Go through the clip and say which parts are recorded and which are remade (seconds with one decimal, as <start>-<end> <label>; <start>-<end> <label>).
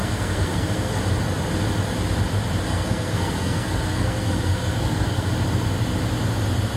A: 0.0-1.0 remade; 1.0-2.7 recorded; 2.7-5.3 remade; 5.3-6.8 recorded